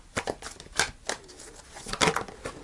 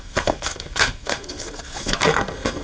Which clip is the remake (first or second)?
second